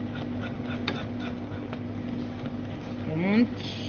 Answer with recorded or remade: recorded